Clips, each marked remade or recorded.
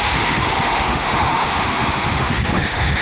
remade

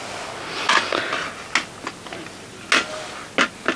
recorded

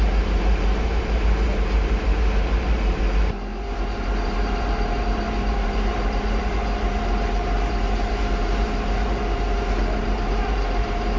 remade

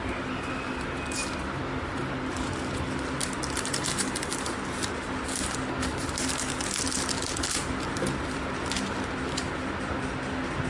recorded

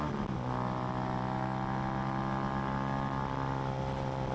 recorded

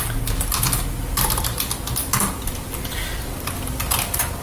recorded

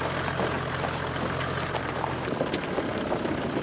recorded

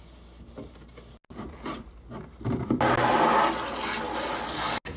recorded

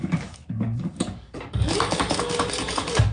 remade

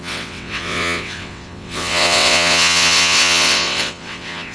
remade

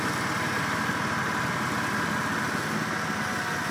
recorded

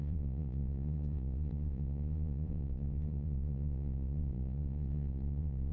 remade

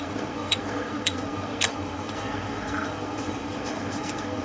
remade